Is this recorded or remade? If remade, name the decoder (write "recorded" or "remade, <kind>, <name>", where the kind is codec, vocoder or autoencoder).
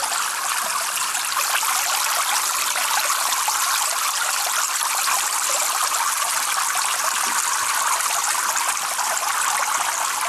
recorded